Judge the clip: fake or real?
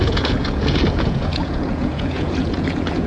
fake